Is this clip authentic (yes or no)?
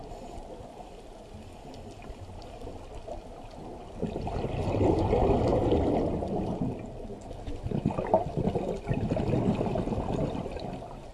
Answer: yes